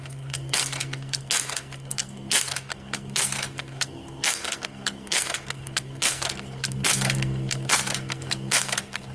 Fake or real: fake